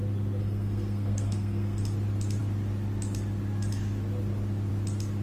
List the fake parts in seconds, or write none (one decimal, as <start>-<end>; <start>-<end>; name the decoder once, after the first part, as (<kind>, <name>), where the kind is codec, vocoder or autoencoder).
0.4-1.8 (codec, SNAC)